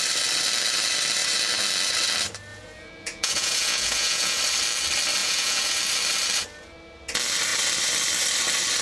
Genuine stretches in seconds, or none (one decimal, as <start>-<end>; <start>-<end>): 0.0-2.5; 4.4-5.2; 5.8-8.8